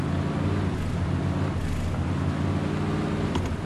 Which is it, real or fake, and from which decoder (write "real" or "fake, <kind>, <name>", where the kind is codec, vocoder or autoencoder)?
real